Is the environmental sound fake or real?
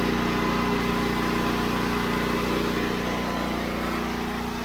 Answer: real